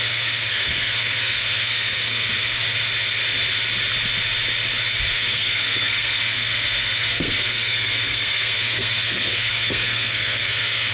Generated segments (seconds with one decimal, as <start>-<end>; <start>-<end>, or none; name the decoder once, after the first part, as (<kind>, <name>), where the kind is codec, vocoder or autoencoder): 0.0-2.6 (codec, SNAC); 5.1-10.9